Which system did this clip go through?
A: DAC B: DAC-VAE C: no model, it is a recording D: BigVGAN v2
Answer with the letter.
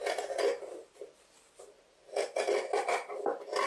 C